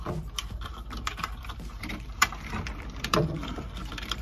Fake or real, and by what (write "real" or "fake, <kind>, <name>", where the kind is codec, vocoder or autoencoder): fake, vocoder, BigVGAN v2